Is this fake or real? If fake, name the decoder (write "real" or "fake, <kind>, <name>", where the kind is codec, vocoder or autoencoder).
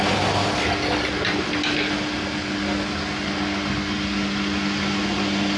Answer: real